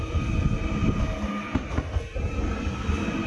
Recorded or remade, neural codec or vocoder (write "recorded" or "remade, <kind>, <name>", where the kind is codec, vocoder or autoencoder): recorded